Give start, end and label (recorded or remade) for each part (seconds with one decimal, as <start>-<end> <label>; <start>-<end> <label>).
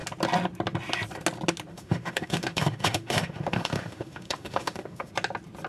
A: 0.0-1.7 recorded; 1.7-5.1 remade; 5.1-5.7 recorded